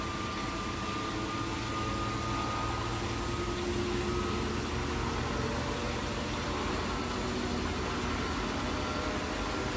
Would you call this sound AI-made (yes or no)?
no